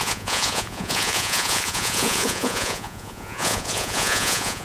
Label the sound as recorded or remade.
remade